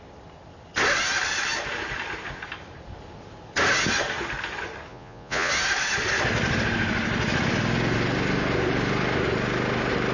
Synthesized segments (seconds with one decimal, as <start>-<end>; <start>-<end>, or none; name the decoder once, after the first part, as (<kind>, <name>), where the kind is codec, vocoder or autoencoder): 4.9-5.5 (vocoder, Vocos)

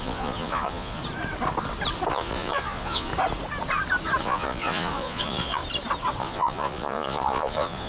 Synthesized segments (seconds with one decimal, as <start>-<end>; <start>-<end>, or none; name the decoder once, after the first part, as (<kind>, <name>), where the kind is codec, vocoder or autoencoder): 0.0-1.0 (vocoder, Vocos); 2.1-3.1; 4.2-5.6; 6.2-7.9

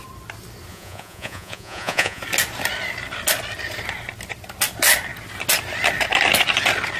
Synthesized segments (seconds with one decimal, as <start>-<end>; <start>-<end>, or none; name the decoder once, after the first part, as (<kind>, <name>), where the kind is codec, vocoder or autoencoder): 0.7-2.2 (vocoder, Vocos)

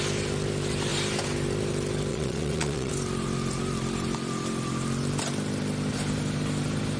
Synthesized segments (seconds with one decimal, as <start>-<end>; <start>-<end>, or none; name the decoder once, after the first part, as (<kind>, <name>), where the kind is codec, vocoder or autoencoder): 2.1-2.9 (vocoder, Vocos)

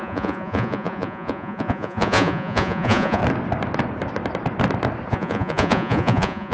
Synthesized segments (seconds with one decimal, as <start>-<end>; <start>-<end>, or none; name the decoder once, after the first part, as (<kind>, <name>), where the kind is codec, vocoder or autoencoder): 0.0-3.2 (vocoder, Vocos); 5.1-6.5

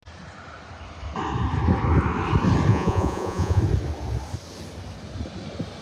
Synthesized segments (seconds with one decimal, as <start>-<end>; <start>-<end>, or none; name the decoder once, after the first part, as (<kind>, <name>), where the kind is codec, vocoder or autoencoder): 2.7-3.6 (vocoder, Vocos)